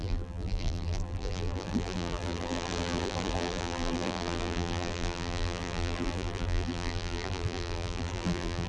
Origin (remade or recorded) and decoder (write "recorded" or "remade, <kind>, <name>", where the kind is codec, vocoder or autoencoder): remade, vocoder, BigVGAN v2